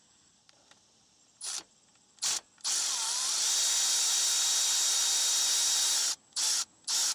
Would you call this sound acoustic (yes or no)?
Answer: yes